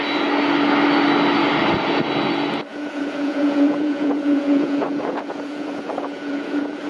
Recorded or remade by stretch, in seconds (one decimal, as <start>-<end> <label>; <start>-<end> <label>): 0.0-2.7 recorded; 2.7-6.9 remade